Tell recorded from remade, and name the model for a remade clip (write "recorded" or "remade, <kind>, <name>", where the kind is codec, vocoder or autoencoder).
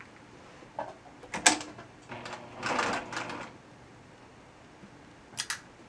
recorded